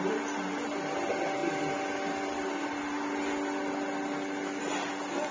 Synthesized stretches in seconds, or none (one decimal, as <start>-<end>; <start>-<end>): none